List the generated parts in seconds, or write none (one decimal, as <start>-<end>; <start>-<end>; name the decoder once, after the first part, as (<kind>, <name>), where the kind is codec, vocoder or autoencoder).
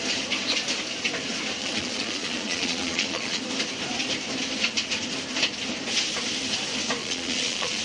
1.6-3.4 (vocoder, Vocos); 7.0-7.8